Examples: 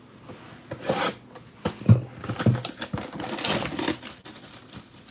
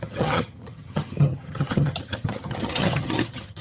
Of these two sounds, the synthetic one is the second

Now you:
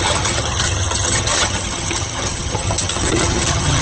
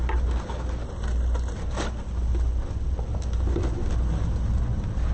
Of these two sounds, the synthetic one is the first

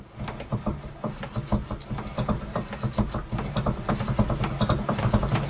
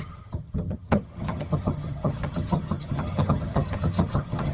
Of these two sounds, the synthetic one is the second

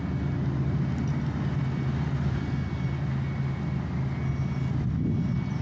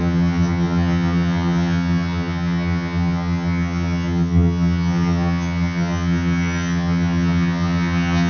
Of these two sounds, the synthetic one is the second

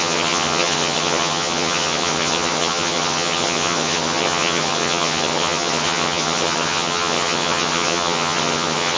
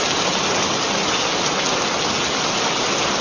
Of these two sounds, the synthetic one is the first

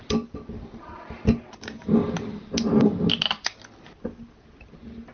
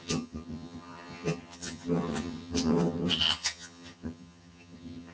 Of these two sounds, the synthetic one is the second